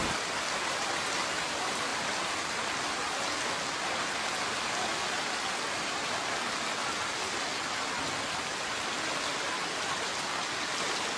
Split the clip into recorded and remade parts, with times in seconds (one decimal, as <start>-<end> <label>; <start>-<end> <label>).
0.0-11.2 recorded